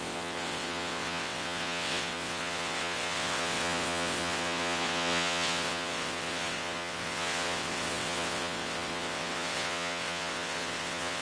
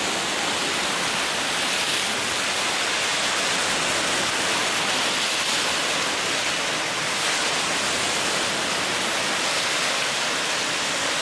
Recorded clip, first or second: second